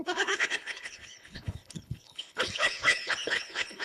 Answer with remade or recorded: remade